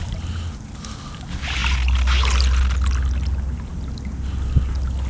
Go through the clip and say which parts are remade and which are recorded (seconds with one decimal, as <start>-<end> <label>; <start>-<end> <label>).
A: 0.0-5.1 recorded